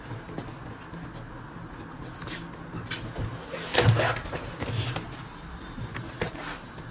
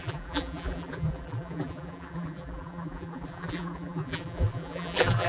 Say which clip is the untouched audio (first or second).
first